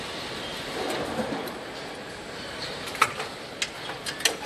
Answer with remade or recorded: recorded